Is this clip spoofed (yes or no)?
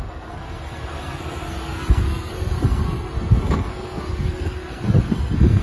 yes